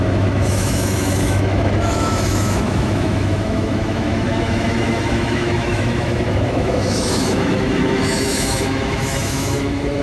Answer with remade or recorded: remade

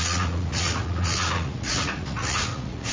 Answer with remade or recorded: remade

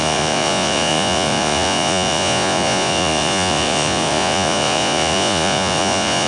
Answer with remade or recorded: remade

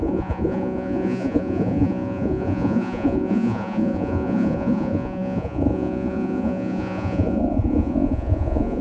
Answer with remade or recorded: remade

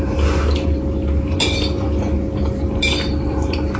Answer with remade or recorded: recorded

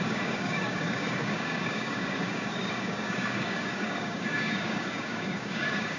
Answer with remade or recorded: remade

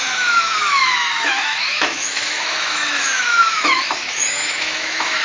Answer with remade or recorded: remade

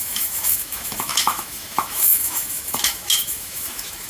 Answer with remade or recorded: remade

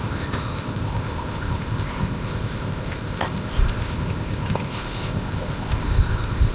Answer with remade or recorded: remade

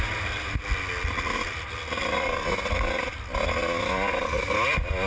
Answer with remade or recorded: recorded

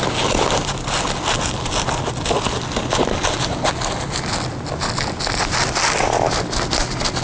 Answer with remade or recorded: recorded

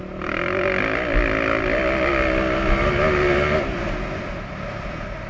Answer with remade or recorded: recorded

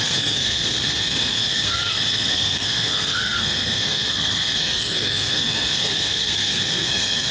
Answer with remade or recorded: remade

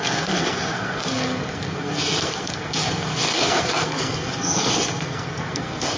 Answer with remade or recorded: remade